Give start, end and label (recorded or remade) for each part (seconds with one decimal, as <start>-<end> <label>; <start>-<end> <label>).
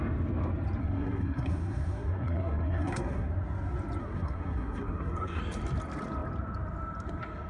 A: 0.0-0.8 recorded; 0.8-3.3 remade; 3.3-4.0 recorded; 4.0-5.4 remade; 5.4-7.5 recorded